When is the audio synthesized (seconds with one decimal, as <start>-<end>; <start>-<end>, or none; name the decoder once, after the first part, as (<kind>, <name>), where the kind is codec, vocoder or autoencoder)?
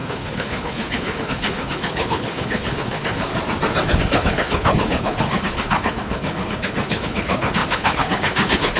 0.0-3.3 (codec, HILCodec); 4.0-8.8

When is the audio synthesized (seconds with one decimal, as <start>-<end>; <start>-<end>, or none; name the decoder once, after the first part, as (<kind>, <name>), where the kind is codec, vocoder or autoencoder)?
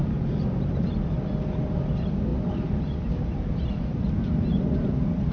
none